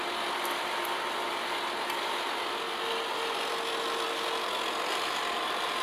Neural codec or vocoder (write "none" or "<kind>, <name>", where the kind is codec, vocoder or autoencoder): none